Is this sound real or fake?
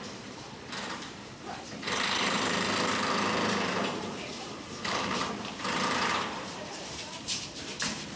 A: fake